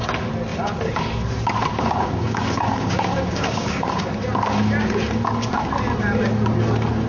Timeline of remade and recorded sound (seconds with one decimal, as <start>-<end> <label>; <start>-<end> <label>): 0.0-1.7 recorded; 1.7-4.1 remade; 4.1-7.1 recorded